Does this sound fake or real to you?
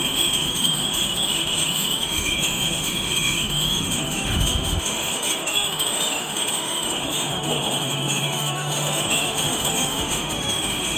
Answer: fake